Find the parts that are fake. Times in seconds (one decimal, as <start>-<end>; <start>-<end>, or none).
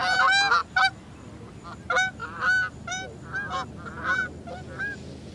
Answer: none